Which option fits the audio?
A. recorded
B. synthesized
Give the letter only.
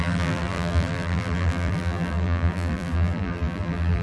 B